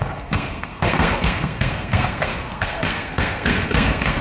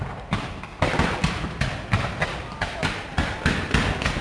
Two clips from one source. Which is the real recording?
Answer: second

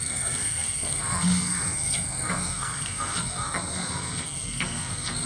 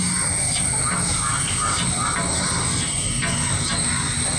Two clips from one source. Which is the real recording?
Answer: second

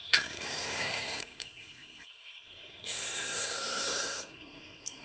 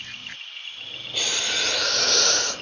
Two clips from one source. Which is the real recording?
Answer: second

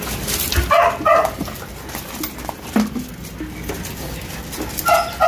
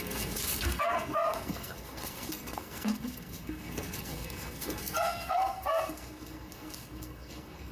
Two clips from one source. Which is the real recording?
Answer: first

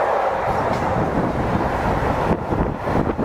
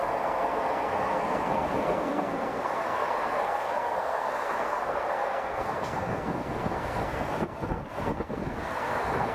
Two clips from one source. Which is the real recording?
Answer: first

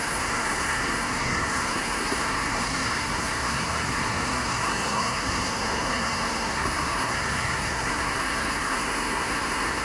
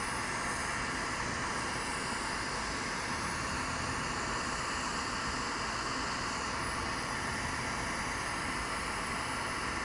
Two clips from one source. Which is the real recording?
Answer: second